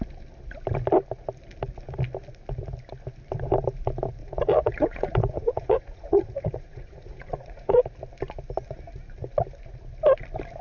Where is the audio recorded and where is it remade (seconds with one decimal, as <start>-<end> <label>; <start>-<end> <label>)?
0.0-4.2 recorded; 4.2-7.8 remade; 7.8-10.6 recorded